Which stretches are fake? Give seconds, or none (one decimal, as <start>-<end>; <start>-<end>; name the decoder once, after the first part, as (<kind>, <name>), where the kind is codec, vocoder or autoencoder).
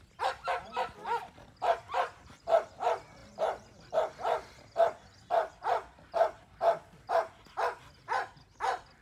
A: none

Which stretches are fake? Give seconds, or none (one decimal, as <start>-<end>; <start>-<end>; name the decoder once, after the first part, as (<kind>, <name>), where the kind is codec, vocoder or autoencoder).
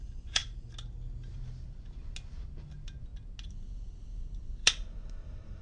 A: none